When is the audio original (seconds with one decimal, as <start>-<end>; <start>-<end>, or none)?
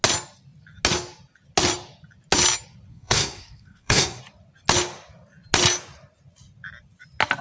0.0-2.9; 4.2-7.4